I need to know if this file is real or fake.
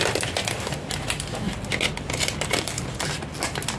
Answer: real